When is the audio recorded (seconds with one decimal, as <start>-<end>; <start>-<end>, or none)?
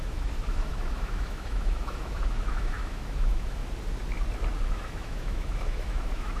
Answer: 3.6-4.7